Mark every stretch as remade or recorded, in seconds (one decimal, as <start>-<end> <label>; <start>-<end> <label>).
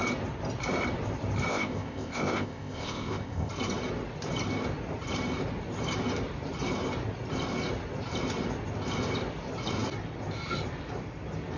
0.0-1.5 recorded; 1.5-3.5 remade; 3.5-11.6 recorded